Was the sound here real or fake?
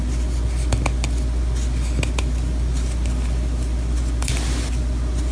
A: real